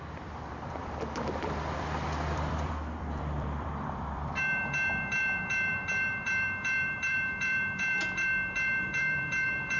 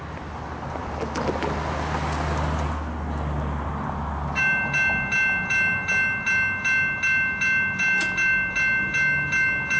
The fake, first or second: first